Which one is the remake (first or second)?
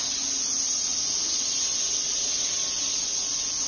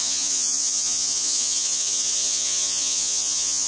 second